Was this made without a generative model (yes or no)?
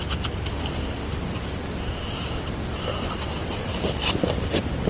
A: yes